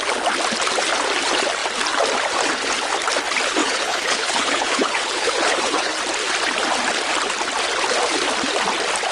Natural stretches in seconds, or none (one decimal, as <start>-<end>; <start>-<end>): 0.0-3.6; 6.0-9.1